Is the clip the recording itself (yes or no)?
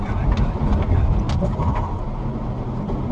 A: yes